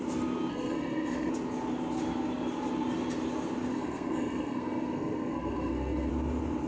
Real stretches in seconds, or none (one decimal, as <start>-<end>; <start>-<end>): 0.0-0.5; 1.3-3.7; 6.1-6.7